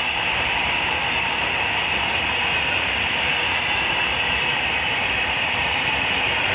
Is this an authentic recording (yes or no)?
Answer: no